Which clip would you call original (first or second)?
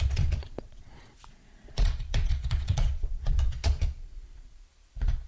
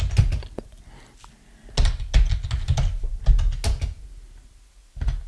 second